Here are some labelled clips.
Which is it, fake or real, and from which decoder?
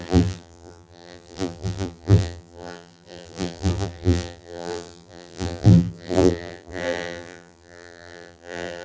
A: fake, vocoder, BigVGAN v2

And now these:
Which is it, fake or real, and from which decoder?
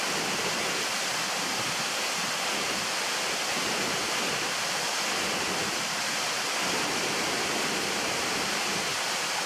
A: real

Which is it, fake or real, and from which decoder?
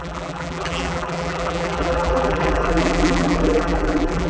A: fake, vocoder, BigVGAN v2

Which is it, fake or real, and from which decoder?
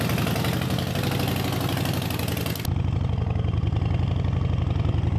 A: real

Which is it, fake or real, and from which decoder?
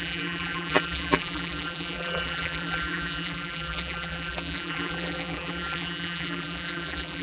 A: fake, vocoder, BigVGAN v2